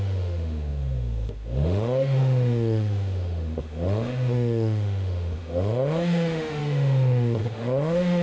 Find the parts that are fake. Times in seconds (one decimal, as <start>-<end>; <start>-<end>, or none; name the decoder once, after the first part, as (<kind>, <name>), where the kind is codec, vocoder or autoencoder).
0.0-8.2 (autoencoder, DAC-VAE)